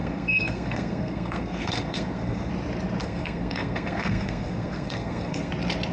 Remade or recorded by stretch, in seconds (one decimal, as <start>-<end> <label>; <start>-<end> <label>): 0.0-2.5 remade; 2.5-3.0 recorded; 3.0-5.5 remade; 5.5-5.9 recorded